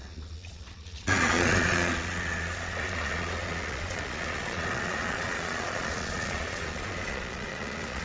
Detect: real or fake fake